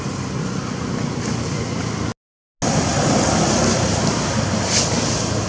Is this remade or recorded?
recorded